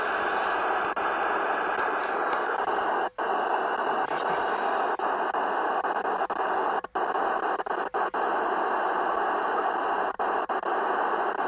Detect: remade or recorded recorded